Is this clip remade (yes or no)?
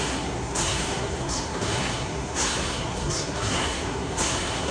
yes